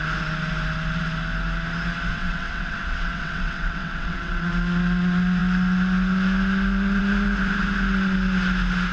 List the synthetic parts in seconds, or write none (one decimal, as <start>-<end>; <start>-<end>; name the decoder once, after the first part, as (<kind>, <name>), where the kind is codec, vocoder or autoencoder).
2.1-4.5 (vocoder, WaveNeXt)